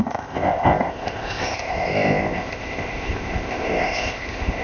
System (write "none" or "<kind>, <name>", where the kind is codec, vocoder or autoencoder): codec, ZipCodec